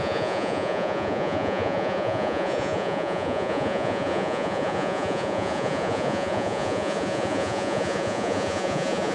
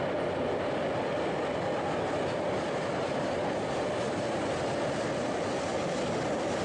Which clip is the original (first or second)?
second